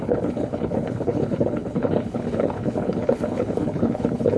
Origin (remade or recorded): remade